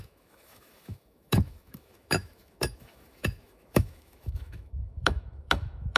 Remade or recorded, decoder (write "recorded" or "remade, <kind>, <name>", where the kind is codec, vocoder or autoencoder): remade, autoencoder, DAC-VAE